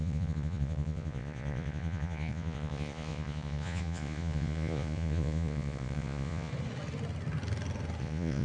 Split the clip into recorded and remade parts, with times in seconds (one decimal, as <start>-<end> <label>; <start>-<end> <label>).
0.0-6.5 remade; 6.5-8.0 recorded; 8.0-8.4 remade